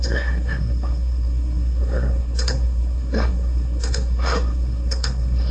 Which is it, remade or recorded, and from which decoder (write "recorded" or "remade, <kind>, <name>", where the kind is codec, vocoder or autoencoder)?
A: remade, codec, SNAC